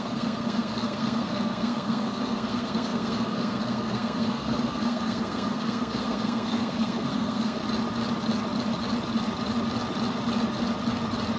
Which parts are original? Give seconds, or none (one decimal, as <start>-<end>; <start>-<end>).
7.6-11.4